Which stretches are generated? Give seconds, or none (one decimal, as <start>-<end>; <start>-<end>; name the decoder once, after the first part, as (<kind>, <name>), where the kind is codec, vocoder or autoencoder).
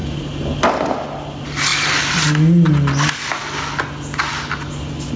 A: none